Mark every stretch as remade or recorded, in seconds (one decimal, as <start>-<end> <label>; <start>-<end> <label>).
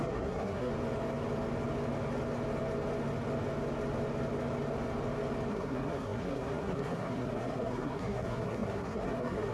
0.0-0.7 remade; 0.7-5.5 recorded; 5.5-9.5 remade